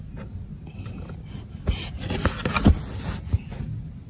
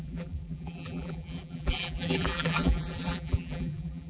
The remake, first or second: second